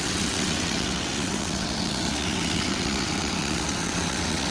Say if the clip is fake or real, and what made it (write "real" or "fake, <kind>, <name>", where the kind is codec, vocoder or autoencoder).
fake, vocoder, WaveNeXt